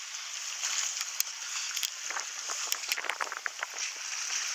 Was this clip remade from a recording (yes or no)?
no